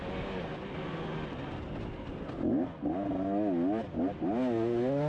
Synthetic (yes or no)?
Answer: no